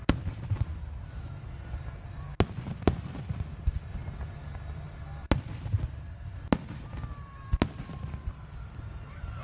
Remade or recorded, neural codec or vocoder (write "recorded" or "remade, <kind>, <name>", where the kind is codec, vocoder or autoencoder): recorded